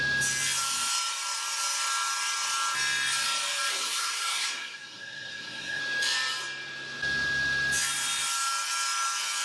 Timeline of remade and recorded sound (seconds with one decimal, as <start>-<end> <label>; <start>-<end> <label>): 0.0-3.7 recorded; 3.7-5.8 remade; 5.8-9.4 recorded